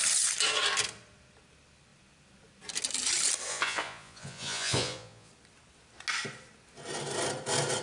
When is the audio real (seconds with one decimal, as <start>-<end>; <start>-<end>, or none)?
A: 0.0-3.5; 5.3-7.8